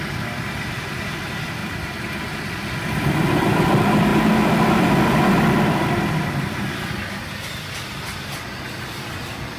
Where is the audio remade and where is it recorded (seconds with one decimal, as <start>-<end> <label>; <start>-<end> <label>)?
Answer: 0.0-1.6 recorded; 1.6-2.2 remade; 2.2-9.6 recorded